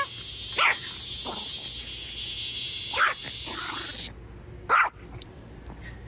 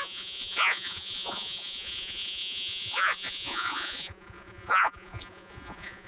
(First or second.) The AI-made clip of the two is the second